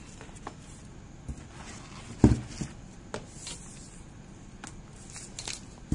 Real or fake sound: real